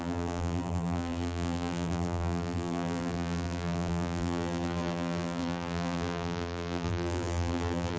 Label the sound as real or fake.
fake